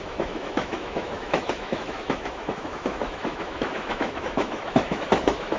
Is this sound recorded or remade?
remade